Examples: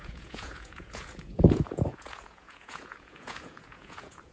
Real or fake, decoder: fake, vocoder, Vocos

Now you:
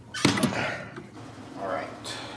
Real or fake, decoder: real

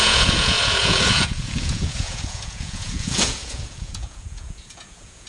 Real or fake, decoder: fake, vocoder, Vocos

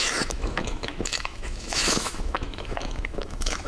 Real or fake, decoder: fake, autoencoder, DAC-VAE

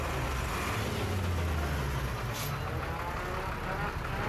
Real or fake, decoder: real